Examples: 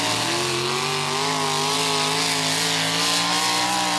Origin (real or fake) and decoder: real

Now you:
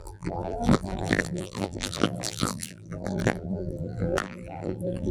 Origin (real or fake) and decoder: fake, vocoder, BigVGAN v2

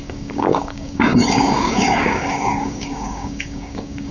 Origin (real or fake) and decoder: fake, codec, DAC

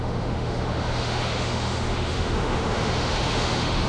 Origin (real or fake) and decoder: fake, autoencoder, DAC-VAE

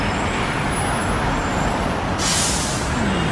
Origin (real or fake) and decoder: real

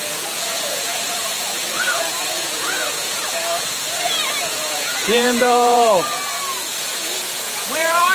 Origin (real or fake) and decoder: fake, vocoder, Vocos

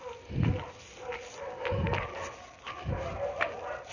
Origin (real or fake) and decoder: real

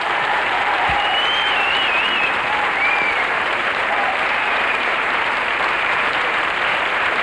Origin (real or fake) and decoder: fake, vocoder, BigVGAN v2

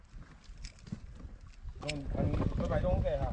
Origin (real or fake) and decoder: real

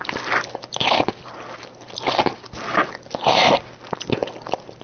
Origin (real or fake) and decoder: real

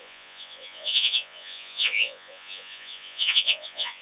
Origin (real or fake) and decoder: fake, vocoder, Vocos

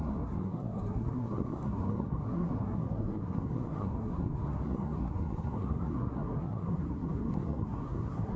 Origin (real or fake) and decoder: fake, codec, SNAC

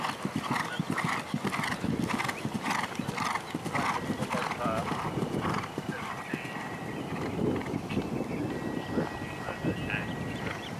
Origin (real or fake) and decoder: real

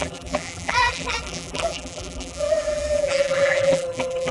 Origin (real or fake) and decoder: fake, vocoder, BigVGAN v2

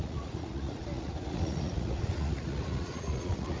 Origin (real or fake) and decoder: fake, vocoder, Vocos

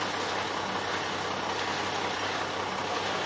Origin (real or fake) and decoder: real